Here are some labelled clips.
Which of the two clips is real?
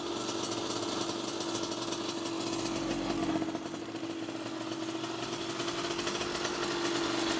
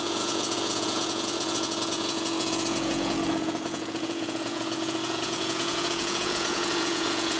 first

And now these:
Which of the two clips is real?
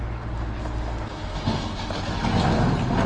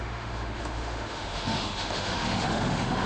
first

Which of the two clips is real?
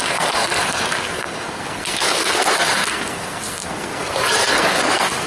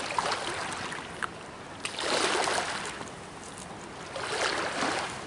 second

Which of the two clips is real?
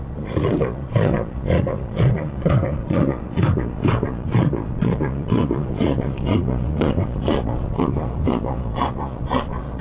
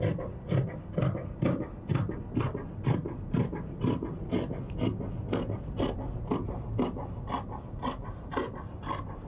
second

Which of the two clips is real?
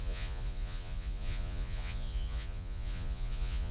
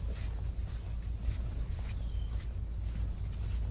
second